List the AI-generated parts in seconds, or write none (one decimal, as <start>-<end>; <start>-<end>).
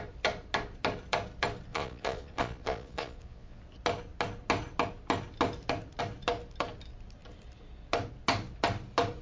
1.7-3.6